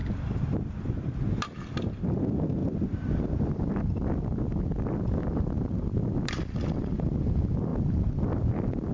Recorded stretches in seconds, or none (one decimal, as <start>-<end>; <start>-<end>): 0.0-2.6; 3.7-7.7

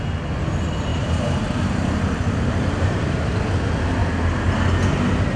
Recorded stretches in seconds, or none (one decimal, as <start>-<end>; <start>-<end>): 0.0-0.9; 3.4-5.4

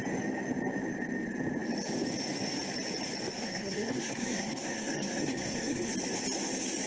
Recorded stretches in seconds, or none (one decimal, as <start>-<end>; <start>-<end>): 0.0-3.4; 5.9-6.9

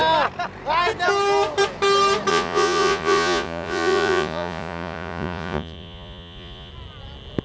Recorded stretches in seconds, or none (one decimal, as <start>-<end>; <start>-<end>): 0.0-2.3; 6.7-7.4